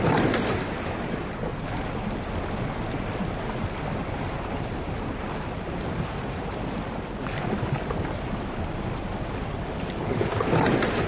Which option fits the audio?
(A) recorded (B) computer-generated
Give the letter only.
A